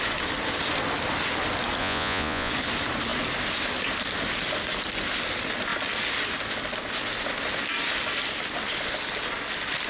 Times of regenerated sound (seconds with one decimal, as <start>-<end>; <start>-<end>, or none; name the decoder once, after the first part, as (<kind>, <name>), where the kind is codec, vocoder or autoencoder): 1.8-2.5 (vocoder, Vocos)